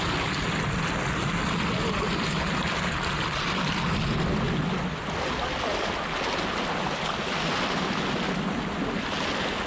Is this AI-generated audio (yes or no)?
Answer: no